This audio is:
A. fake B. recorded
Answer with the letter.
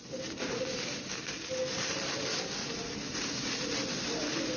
B